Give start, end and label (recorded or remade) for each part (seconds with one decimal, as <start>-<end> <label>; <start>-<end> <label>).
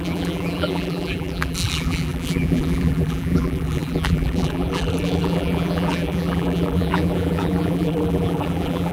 0.0-8.9 remade